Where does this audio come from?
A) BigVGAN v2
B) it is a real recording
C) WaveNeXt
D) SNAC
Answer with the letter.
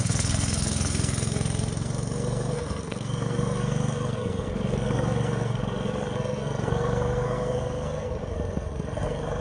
D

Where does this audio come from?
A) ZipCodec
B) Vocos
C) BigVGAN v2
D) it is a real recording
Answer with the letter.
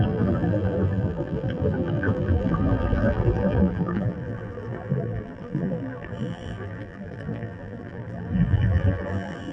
C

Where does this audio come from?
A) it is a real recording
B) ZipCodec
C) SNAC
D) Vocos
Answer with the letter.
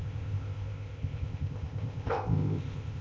B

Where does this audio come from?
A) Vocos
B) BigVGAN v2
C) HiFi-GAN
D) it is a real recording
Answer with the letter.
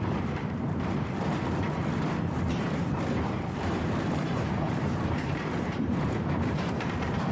B